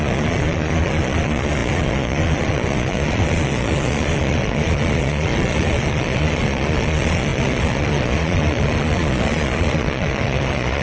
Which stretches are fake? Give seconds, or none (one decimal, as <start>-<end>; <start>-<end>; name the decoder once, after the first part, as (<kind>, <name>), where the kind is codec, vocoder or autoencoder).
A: 0.0-10.8 (vocoder, Vocos)